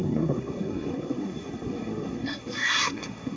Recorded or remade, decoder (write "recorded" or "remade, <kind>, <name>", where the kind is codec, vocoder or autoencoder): remade, codec, SNAC